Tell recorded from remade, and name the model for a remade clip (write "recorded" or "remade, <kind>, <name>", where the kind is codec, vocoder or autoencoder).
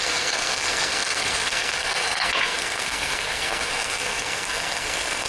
remade, codec, SNAC